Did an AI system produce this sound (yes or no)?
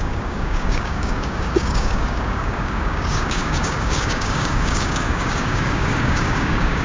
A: yes